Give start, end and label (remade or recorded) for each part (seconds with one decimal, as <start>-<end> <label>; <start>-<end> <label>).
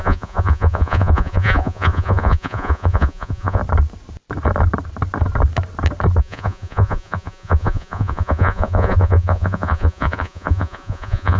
0.0-3.6 remade; 3.6-6.2 recorded; 6.2-11.4 remade